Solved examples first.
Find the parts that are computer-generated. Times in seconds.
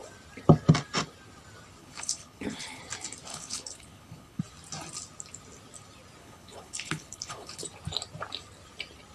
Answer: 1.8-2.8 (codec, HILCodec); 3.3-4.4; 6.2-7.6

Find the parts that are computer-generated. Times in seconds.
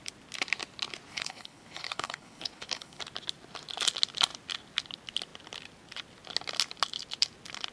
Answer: 1.1-3.0 (codec, HILCodec)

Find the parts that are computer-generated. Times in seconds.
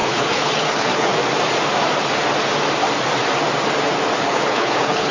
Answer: 0.0-1.1 (codec, HILCodec); 4.2-5.1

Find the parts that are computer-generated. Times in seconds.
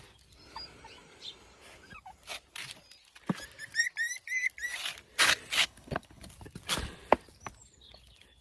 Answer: 5.6-6.3 (codec, HILCodec)